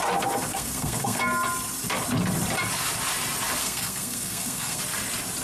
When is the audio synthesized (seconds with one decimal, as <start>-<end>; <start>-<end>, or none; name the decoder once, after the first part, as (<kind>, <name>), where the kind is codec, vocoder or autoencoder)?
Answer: 0.5-1.2 (codec, SNAC); 3.6-4.8